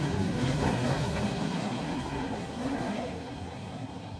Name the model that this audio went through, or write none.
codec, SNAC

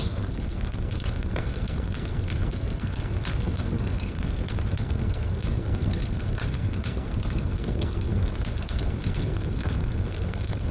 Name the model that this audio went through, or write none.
codec, SNAC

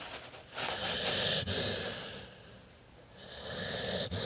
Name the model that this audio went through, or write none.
none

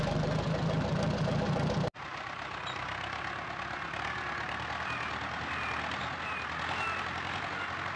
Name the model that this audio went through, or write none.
none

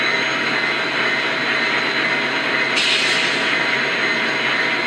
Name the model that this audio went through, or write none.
none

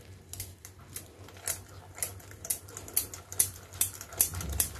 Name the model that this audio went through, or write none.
none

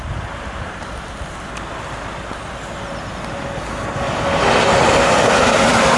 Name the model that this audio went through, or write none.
none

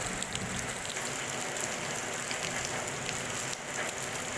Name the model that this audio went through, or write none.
none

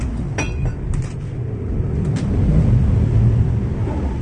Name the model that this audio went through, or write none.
none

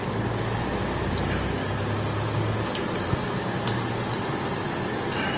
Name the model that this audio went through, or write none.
none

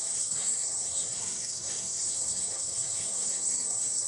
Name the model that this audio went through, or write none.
codec, SNAC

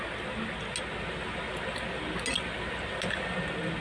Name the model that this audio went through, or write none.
none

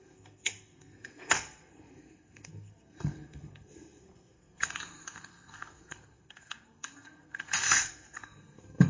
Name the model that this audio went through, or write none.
codec, SNAC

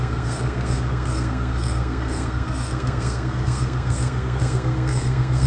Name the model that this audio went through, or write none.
codec, SNAC